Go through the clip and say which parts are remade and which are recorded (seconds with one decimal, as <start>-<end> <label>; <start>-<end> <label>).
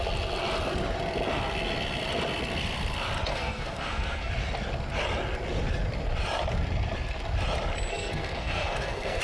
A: 0.0-3.3 recorded; 3.3-4.3 remade; 4.3-7.9 recorded; 7.9-9.2 remade